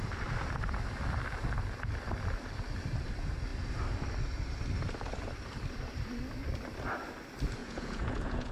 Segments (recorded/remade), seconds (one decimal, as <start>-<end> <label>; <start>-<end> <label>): 0.0-7.6 recorded; 7.6-8.5 remade